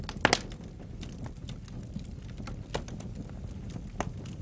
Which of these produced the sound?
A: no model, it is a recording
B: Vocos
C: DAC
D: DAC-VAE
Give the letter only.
A